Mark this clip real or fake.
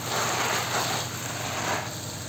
real